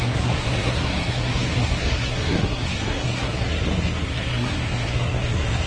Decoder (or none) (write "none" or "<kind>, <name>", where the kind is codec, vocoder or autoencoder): codec, SNAC